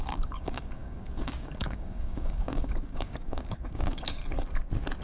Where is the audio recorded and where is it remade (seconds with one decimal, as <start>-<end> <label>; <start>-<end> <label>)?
0.0-4.2 remade; 4.2-5.0 recorded